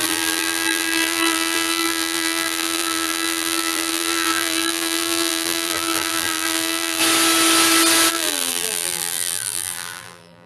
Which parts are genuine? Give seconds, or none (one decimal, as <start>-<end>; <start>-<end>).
7.0-8.1